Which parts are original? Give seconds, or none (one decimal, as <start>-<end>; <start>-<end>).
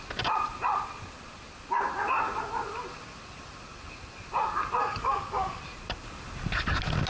0.0-4.8; 5.6-7.1